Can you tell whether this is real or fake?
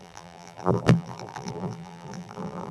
fake